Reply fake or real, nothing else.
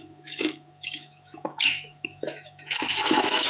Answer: fake